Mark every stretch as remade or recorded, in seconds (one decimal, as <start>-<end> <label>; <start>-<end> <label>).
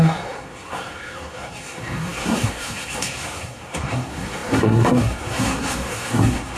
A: 0.0-6.6 remade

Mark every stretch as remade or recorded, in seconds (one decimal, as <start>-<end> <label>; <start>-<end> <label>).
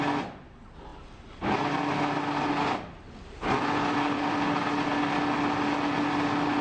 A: 0.0-6.6 recorded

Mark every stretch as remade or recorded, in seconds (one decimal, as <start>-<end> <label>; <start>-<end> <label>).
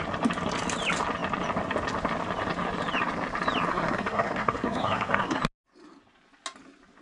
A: 0.0-3.7 recorded; 3.7-5.4 remade; 5.4-7.0 recorded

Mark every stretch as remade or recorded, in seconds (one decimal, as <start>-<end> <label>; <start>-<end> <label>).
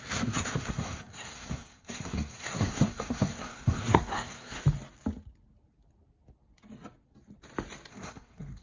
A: 0.0-4.6 remade; 4.6-7.9 recorded; 7.9-8.6 remade